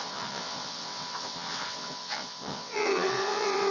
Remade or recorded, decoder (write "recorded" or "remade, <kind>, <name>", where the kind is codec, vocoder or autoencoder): remade, vocoder, WaveNeXt